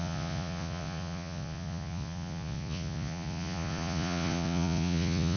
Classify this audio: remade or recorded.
remade